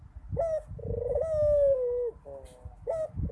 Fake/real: real